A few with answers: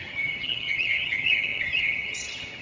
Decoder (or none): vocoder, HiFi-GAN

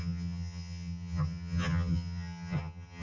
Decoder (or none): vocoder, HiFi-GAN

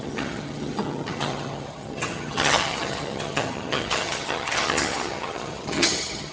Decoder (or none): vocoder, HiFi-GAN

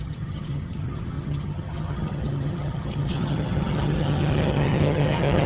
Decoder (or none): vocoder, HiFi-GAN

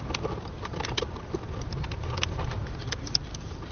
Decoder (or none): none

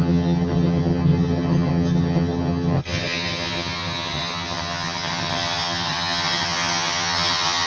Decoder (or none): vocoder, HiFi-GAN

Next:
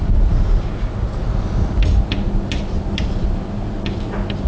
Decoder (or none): none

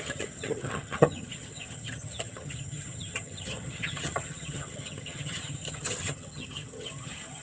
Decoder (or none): vocoder, HiFi-GAN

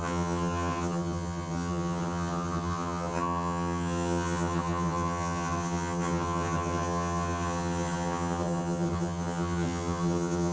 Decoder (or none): vocoder, HiFi-GAN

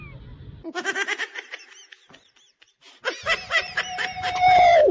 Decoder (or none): none